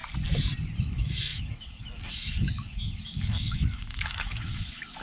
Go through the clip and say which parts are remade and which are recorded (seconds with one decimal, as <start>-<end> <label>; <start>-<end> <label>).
0.0-0.8 recorded; 0.8-5.0 remade